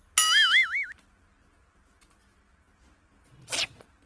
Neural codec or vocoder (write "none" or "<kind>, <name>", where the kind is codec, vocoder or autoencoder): none